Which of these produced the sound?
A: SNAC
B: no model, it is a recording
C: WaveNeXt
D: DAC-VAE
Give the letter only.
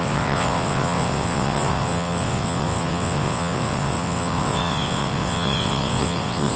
C